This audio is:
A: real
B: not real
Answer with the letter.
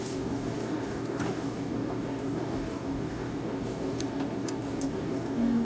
B